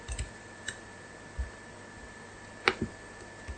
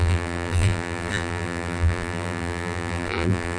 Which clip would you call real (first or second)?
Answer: first